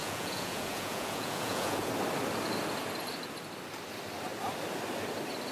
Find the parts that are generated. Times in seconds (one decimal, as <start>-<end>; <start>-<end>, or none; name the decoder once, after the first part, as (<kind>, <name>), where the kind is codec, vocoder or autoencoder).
0.0-1.9 (vocoder, Vocos)